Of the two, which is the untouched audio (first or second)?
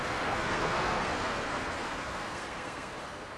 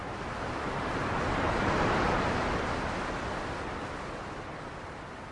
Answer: second